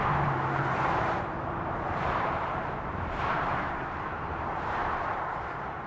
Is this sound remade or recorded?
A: remade